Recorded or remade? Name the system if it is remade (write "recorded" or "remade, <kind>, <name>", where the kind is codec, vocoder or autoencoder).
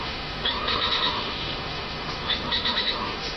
remade, autoencoder, DAC-VAE